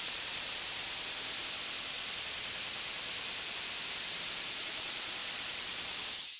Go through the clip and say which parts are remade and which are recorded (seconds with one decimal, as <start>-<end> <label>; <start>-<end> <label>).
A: 0.0-0.8 remade; 0.8-4.6 recorded; 4.6-6.4 remade